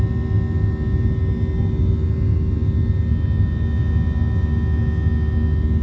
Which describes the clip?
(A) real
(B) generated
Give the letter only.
A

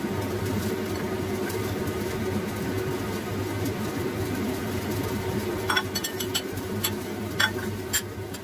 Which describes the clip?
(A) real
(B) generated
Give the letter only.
A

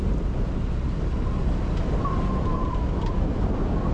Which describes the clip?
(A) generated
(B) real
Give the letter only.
B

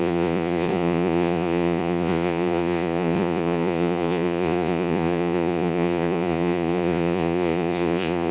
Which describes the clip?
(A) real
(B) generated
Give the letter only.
B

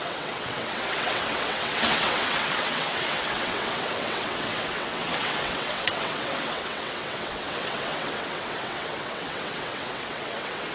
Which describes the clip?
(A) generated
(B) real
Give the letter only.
A